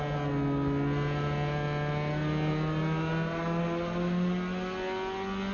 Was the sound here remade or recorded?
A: recorded